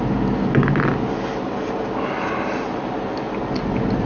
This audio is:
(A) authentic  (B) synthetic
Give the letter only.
A